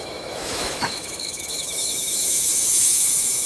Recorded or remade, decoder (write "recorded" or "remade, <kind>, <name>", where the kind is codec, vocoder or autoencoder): remade, autoencoder, DAC-VAE